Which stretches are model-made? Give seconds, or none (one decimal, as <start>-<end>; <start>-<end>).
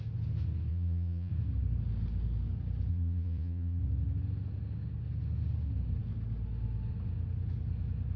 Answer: 0.7-1.3; 2.9-3.8